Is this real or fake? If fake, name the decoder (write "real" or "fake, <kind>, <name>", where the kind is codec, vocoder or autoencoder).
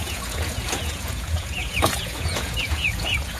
fake, vocoder, Vocos